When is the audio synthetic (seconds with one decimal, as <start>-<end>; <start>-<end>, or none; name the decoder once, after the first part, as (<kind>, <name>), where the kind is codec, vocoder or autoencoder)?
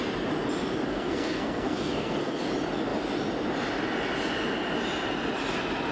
0.9-2.4 (codec, SNAC)